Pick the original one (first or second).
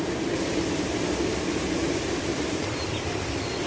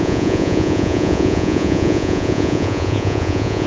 first